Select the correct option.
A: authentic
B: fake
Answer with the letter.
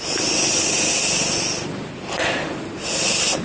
A